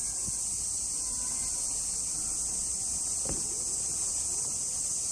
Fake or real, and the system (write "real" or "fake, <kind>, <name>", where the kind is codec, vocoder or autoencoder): real